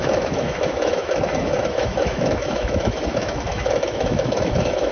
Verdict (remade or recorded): remade